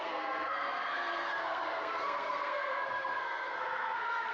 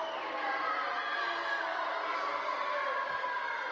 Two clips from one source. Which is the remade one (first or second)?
first